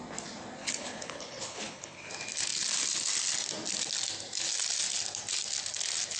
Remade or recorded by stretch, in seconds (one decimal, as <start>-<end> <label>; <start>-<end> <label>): 0.0-0.6 recorded; 0.6-2.1 remade; 2.1-6.2 recorded